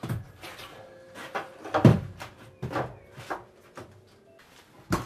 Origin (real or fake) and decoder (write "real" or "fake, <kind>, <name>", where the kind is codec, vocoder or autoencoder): real